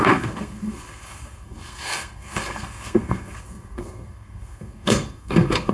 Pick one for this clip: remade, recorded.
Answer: remade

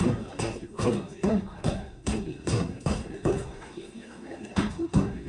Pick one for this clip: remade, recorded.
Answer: remade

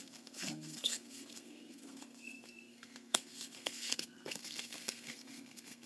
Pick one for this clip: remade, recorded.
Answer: remade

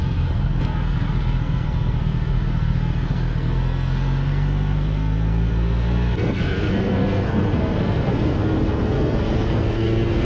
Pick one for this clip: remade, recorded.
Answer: remade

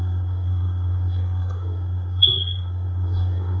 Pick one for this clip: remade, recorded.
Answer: remade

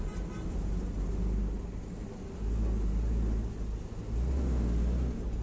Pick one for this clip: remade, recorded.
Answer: recorded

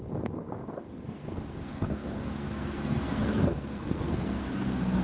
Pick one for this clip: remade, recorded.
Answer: remade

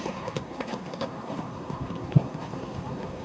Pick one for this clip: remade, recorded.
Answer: remade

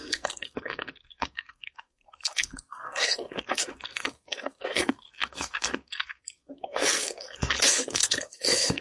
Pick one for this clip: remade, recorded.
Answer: remade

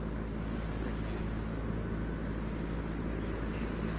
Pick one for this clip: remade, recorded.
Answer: recorded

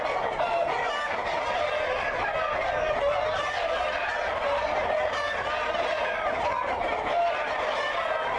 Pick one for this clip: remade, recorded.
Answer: recorded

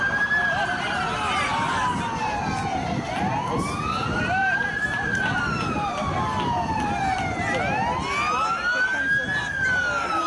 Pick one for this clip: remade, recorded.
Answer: recorded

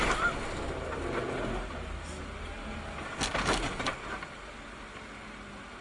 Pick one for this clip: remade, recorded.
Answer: recorded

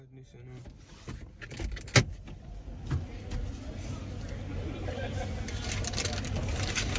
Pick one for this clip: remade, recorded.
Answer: recorded